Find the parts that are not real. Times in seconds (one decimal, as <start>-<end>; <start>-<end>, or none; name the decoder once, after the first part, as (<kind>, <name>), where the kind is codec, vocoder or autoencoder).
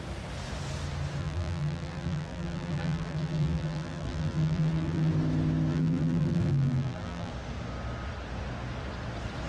1.2-5.1 (vocoder, BigVGAN v2); 5.7-7.3